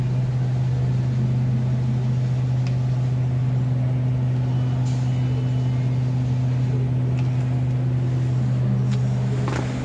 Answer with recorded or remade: recorded